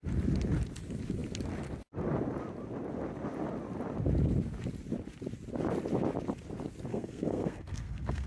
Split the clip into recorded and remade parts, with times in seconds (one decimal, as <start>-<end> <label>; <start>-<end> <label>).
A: 0.0-6.9 recorded; 6.9-8.3 remade

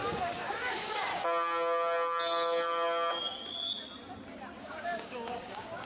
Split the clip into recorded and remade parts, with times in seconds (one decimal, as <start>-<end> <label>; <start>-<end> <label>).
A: 0.0-1.1 remade; 1.1-4.6 recorded; 4.6-5.9 remade

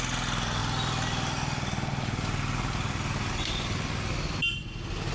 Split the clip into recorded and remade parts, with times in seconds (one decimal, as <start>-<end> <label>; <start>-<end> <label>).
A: 0.0-5.1 recorded

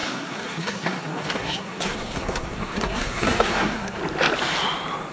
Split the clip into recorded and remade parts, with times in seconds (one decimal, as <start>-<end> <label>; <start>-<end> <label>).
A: 0.0-4.0 remade; 4.0-5.1 recorded

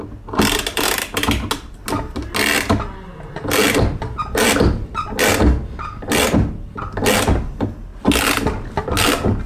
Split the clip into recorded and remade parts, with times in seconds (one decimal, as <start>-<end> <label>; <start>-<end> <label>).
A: 0.0-9.5 recorded

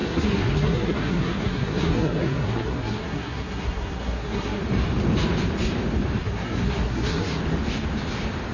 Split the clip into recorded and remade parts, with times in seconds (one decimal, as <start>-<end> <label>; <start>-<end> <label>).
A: 0.0-4.6 remade; 4.6-6.2 recorded; 6.2-7.4 remade; 7.4-8.5 recorded

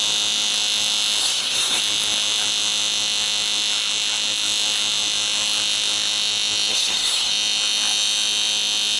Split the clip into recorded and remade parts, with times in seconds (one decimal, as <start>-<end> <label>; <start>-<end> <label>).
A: 0.0-1.2 recorded; 1.2-1.8 remade; 1.8-6.7 recorded; 6.7-7.3 remade; 7.3-9.0 recorded

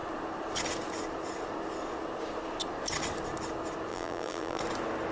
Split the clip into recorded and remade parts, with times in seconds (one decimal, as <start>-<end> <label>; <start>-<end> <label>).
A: 0.0-3.9 recorded; 3.9-4.6 remade; 4.6-5.1 recorded